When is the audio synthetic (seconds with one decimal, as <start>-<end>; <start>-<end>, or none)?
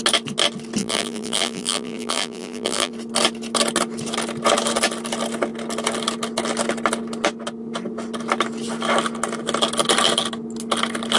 0.8-2.9